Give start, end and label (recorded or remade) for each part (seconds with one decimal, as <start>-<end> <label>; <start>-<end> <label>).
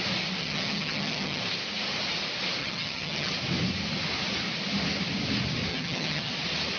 0.0-0.4 recorded; 0.4-1.4 remade; 1.4-2.6 recorded; 2.6-3.3 remade; 3.3-5.7 recorded; 5.7-6.3 remade; 6.3-6.8 recorded